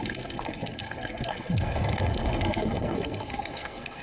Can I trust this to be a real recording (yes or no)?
no